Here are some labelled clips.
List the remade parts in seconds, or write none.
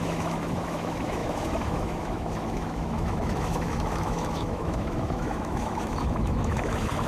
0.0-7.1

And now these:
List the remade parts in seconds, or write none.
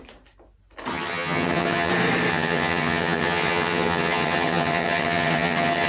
0.9-1.9; 2.3-5.9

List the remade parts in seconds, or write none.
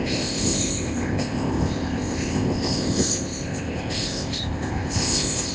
0.0-5.5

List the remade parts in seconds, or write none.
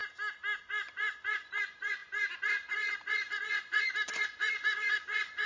0.6-5.5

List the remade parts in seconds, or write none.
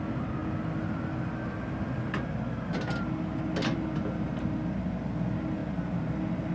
none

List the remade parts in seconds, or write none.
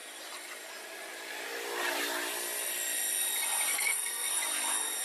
3.7-4.3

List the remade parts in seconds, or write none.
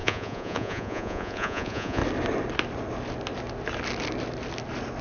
0.0-2.0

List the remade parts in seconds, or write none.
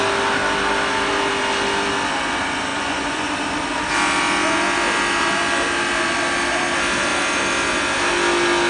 2.7-3.3